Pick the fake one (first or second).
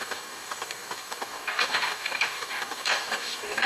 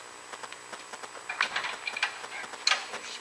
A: first